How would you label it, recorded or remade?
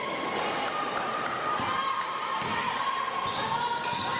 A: remade